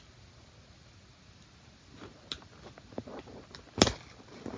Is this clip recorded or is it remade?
recorded